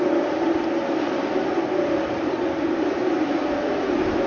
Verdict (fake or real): real